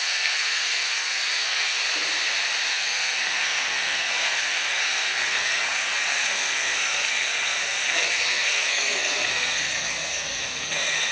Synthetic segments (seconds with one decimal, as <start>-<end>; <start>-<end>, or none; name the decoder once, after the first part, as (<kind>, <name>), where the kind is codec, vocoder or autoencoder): 0.0-1.8 (codec, SNAC); 2.7-11.1